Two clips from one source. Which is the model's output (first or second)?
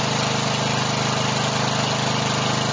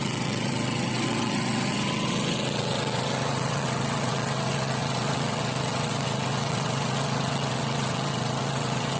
second